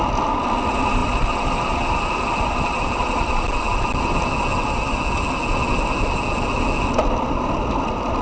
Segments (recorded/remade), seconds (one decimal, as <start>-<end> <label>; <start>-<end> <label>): 0.0-8.2 recorded